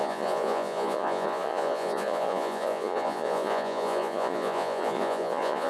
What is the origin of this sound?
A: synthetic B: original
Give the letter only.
A